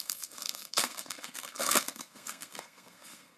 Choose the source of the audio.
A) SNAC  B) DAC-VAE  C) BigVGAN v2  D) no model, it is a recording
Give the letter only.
A